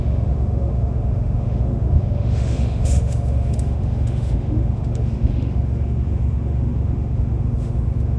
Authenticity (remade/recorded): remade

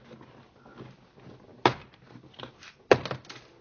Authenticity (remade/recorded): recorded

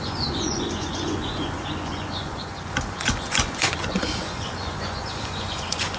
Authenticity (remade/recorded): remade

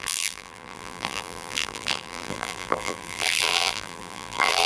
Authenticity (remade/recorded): remade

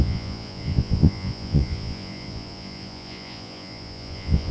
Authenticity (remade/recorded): remade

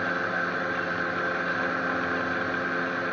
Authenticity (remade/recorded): recorded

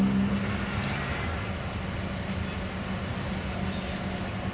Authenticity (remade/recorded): recorded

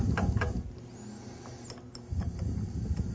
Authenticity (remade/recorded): recorded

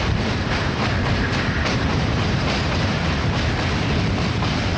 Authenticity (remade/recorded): remade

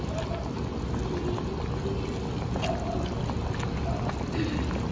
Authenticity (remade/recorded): recorded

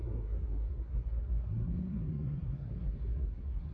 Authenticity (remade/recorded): remade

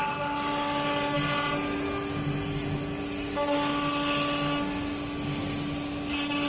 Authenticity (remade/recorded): recorded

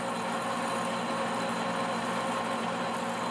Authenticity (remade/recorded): recorded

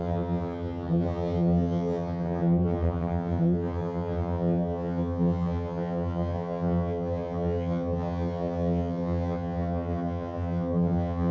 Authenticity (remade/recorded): remade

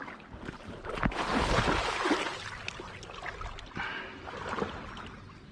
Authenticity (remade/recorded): recorded